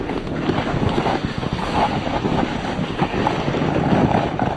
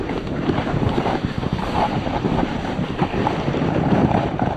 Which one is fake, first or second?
second